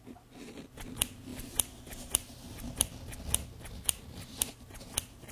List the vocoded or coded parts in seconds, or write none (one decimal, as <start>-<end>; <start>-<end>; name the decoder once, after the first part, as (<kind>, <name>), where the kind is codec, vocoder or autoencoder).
none